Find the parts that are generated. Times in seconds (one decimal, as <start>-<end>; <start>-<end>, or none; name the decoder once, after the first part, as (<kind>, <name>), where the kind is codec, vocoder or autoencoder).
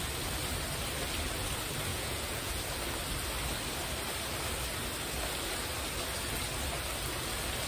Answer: 1.9-2.6 (vocoder, Vocos)